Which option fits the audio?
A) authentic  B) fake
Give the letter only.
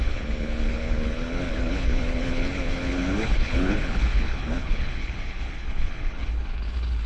B